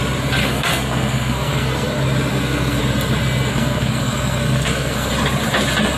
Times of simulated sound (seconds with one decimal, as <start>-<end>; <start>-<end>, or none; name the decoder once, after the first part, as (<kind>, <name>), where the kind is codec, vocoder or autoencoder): 0.4-1.9 (codec, SNAC); 2.3-2.8; 3.5-5.1